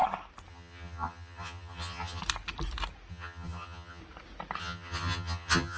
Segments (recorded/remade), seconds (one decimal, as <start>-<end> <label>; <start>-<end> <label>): 0.0-0.5 recorded; 0.5-2.2 remade; 2.2-3.1 recorded; 3.1-4.0 remade; 4.0-4.6 recorded; 4.6-5.8 remade